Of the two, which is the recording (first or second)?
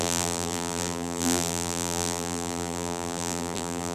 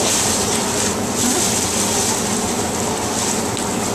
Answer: second